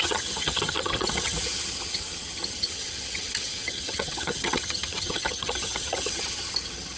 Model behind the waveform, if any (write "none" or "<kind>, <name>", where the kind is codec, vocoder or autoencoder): vocoder, HiFi-GAN